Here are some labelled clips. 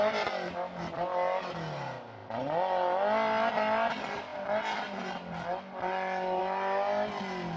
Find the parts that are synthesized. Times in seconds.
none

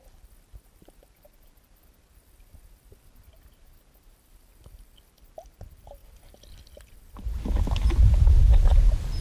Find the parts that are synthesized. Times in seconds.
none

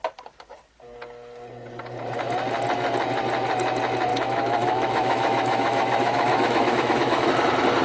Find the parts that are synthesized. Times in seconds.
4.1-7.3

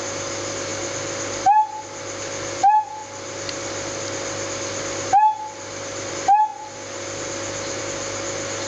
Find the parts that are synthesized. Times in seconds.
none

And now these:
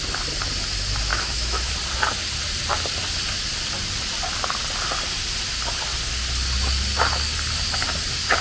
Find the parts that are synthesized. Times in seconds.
1.1-1.7

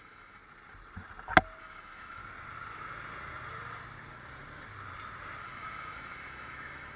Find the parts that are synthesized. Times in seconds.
0.0-0.4; 1.6-2.2; 5.4-7.0

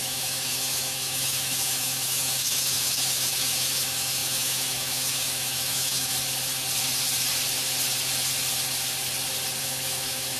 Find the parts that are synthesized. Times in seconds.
0.0-6.1; 9.6-10.4